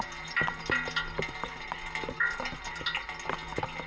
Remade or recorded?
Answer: recorded